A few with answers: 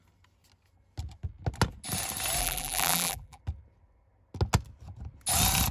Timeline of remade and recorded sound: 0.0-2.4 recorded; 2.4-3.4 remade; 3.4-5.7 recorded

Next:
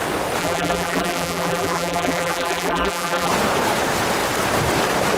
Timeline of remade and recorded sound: 0.0-0.4 recorded; 0.4-3.3 remade; 3.3-5.2 recorded

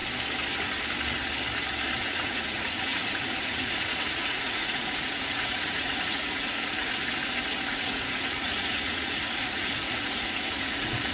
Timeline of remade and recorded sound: 0.0-2.0 recorded; 2.0-7.0 remade; 7.0-7.7 recorded; 7.7-11.1 remade

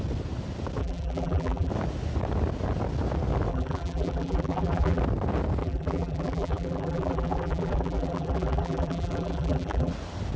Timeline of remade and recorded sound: 0.0-0.8 recorded; 0.8-1.7 remade; 1.7-3.5 recorded; 3.5-5.0 remade; 5.0-5.6 recorded; 5.6-9.9 remade; 9.9-10.4 recorded

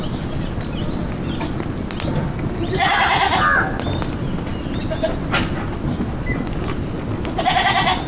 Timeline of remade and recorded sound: 0.0-8.1 recorded